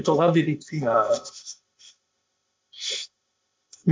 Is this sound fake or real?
fake